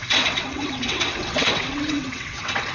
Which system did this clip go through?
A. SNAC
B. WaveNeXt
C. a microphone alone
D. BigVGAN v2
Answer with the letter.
B